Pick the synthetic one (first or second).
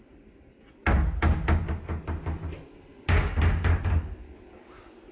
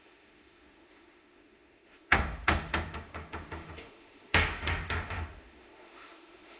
second